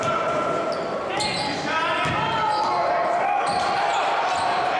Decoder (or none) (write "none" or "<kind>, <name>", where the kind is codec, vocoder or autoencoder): none